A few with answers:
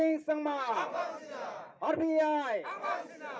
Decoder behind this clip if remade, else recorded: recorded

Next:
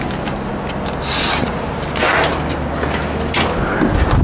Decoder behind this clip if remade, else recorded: recorded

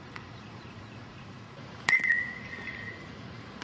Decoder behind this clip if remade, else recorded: remade, vocoder, Vocos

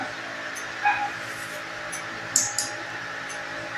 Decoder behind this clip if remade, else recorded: recorded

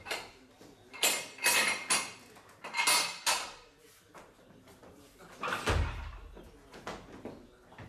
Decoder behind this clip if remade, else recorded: recorded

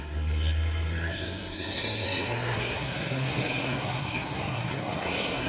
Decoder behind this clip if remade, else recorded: remade, codec, SNAC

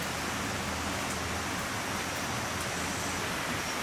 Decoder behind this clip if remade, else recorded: recorded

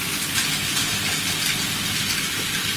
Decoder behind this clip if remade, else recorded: recorded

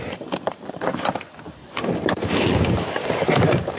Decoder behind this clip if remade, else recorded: remade, vocoder, BigVGAN v2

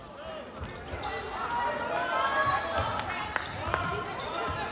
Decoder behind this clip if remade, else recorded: recorded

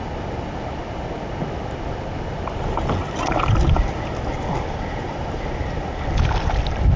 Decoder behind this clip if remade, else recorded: recorded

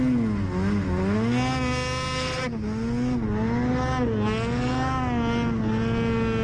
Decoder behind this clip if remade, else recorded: recorded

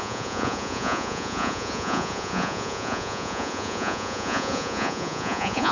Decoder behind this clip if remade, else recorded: remade, vocoder, Vocos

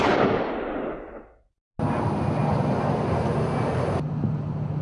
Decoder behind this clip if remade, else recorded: recorded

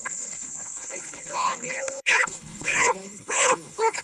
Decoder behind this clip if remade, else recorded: remade, codec, HILCodec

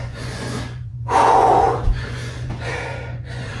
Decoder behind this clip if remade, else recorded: remade, vocoder, Vocos